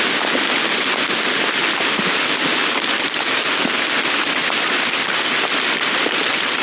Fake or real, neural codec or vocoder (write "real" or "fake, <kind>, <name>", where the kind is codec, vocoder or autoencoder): real